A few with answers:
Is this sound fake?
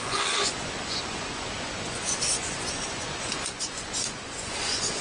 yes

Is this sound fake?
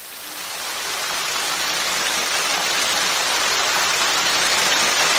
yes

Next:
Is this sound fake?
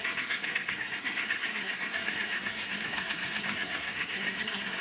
yes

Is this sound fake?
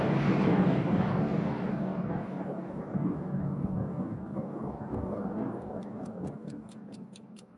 yes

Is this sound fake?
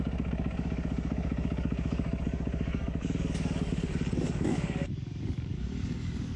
yes